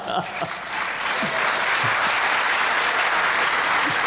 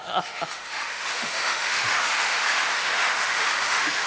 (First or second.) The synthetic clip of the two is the second